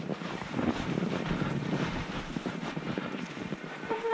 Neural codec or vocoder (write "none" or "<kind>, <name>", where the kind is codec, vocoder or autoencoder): vocoder, BigVGAN v2